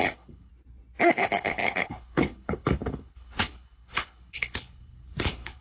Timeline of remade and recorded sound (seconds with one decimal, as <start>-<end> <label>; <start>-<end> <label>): 0.0-0.5 remade; 0.5-1.1 recorded; 1.1-5.6 remade